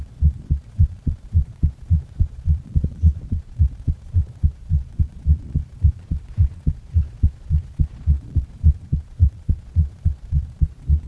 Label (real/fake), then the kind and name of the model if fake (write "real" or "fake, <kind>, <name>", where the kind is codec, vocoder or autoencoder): fake, vocoder, Vocos